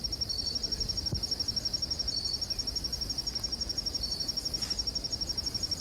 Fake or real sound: real